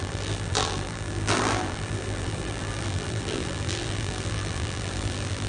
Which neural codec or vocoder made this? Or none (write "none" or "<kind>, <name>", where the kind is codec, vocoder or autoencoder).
vocoder, BigVGAN v2